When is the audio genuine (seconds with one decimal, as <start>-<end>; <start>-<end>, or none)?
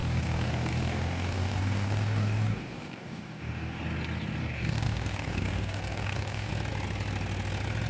3.8-4.4; 6.5-7.9